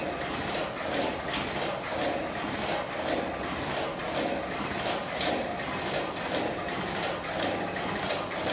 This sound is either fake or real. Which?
real